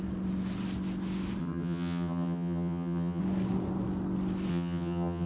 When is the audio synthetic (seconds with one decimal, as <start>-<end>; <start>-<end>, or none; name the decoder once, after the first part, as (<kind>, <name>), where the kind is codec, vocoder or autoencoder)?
1.4-3.2 (vocoder, HiFi-GAN); 4.5-5.3